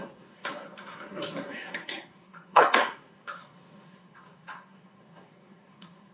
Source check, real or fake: fake